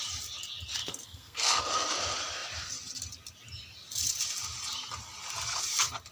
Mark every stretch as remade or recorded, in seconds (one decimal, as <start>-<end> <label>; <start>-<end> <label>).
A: 0.0-0.8 recorded; 0.8-1.6 remade; 1.6-6.1 recorded